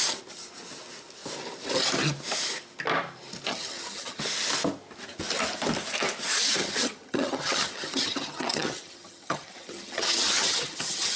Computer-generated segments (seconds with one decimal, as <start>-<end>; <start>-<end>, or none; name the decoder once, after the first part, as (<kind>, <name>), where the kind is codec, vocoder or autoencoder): 3.5-4.2 (vocoder, HiFi-GAN); 6.6-11.2